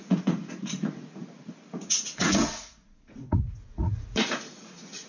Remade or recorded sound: remade